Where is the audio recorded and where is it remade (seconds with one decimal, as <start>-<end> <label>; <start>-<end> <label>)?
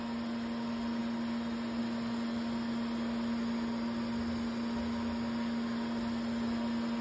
0.0-7.0 recorded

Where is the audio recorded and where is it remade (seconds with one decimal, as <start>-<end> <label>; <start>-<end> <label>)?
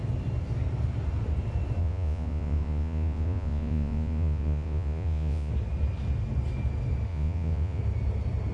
0.0-1.8 recorded; 1.8-5.5 remade; 5.5-7.1 recorded; 7.1-7.8 remade; 7.8-8.5 recorded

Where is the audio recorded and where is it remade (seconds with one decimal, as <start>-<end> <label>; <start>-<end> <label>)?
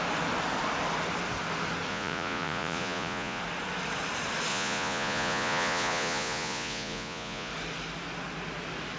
0.0-1.9 recorded; 1.9-3.4 remade; 3.4-4.5 recorded; 4.5-7.5 remade; 7.5-9.0 recorded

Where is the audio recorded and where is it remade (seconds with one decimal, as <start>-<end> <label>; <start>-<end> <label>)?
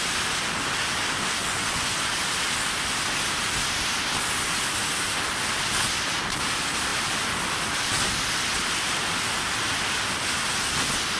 0.0-1.4 recorded; 1.4-2.1 remade; 2.1-11.2 recorded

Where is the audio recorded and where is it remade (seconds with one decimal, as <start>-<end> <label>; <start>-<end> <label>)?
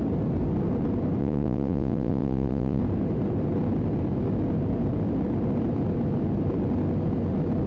0.0-1.2 recorded; 1.2-2.8 remade; 2.8-7.7 recorded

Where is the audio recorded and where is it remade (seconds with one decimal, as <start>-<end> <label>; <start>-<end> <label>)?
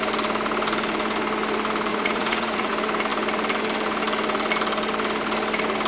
0.0-1.9 recorded; 1.9-2.7 remade; 2.7-5.9 recorded